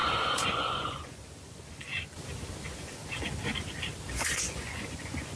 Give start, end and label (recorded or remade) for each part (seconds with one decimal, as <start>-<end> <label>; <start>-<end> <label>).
0.0-1.9 remade; 1.9-2.6 recorded; 2.6-3.0 remade; 3.0-4.1 recorded; 4.1-5.4 remade

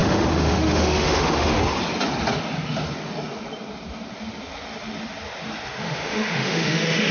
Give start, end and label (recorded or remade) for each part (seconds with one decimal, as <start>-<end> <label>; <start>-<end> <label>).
0.0-1.6 remade; 1.6-5.8 recorded; 5.8-7.1 remade

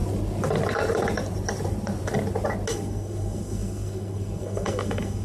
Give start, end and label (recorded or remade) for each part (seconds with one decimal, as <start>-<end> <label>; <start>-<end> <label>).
0.0-2.7 recorded; 2.7-5.2 remade

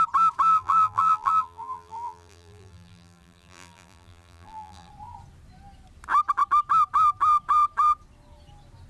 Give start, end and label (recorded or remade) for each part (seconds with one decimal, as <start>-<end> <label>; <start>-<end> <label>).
0.0-0.5 recorded; 0.5-4.9 remade; 4.9-8.9 recorded

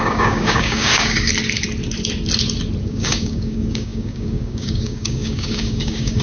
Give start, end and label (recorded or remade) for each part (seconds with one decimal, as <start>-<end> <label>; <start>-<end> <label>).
0.0-1.3 remade; 1.3-2.8 recorded; 2.8-6.2 remade

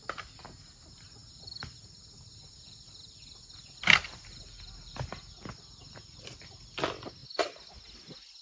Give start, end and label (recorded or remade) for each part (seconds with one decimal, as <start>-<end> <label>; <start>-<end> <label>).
0.0-8.4 recorded

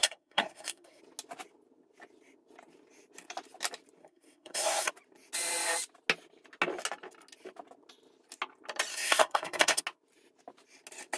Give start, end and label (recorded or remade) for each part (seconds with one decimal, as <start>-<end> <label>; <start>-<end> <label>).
0.0-1.0 remade; 1.0-4.0 recorded; 4.0-4.9 remade; 4.9-8.9 recorded; 8.9-9.8 remade; 9.8-11.2 recorded

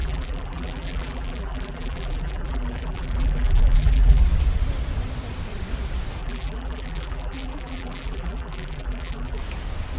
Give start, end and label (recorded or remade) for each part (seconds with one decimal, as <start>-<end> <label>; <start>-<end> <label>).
0.0-4.2 remade; 4.2-6.2 recorded; 6.2-9.4 remade; 9.4-10.0 recorded